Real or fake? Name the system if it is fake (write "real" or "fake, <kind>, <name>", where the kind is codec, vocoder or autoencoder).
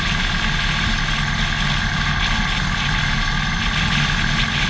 real